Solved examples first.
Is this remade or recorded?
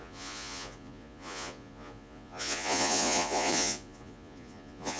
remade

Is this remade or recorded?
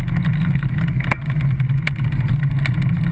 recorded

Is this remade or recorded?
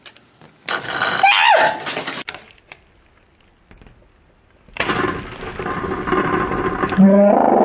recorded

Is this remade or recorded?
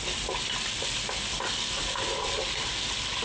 recorded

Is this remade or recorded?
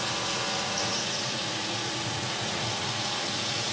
remade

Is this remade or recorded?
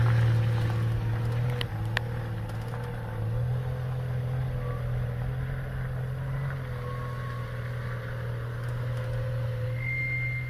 recorded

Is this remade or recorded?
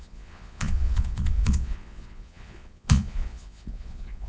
remade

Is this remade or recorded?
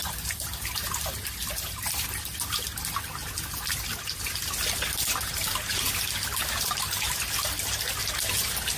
recorded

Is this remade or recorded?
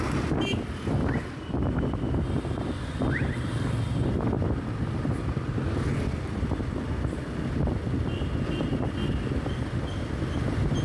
recorded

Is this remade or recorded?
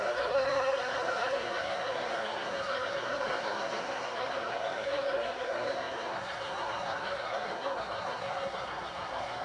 remade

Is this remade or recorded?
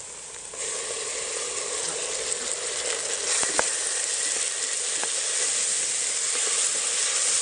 recorded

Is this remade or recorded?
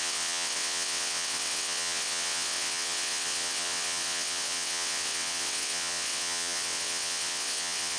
remade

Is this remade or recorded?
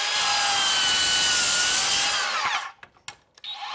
recorded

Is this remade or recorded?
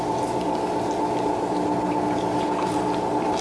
recorded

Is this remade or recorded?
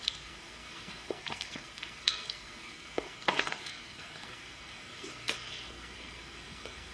remade